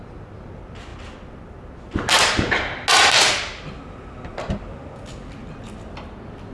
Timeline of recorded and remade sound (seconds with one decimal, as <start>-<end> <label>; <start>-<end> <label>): 0.0-6.5 recorded